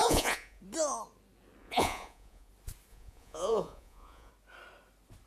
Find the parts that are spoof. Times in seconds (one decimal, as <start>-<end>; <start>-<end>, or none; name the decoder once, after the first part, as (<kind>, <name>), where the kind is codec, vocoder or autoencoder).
0.0-0.6 (vocoder, Vocos); 1.6-2.5; 2.9-4.3